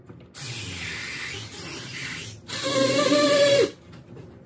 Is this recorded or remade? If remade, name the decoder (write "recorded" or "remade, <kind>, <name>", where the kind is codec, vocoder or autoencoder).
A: recorded